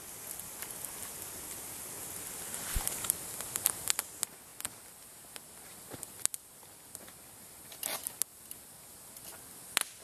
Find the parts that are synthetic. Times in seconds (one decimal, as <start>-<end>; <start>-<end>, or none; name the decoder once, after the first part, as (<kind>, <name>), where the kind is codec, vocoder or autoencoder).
none